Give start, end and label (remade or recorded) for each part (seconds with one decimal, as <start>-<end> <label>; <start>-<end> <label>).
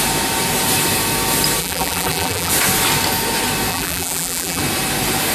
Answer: 0.0-1.6 recorded; 1.6-2.5 remade; 2.5-3.7 recorded; 3.7-4.6 remade; 4.6-5.3 recorded